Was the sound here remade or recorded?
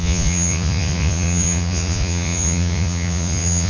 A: remade